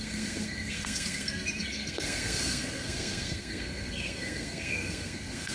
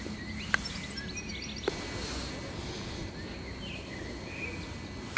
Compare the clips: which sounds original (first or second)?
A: second